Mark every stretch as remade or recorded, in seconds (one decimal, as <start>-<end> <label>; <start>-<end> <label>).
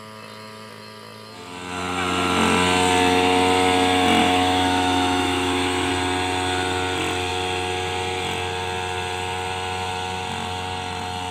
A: 0.0-4.2 recorded; 4.2-5.9 remade; 5.9-11.3 recorded